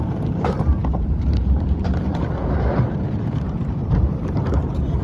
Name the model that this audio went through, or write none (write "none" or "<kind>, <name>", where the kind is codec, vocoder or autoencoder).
vocoder, BigVGAN v2